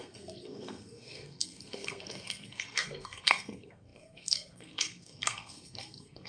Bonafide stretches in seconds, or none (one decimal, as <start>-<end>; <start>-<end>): none